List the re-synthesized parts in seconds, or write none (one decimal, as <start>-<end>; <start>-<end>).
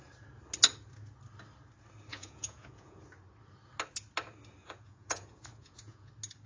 2.1-3.0; 4.6-6.1